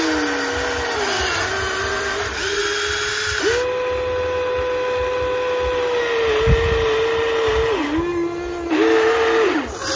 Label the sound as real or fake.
real